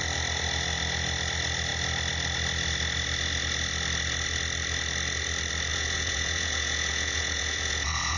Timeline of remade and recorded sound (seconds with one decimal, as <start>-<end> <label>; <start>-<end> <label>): 0.0-5.7 recorded; 5.7-8.2 remade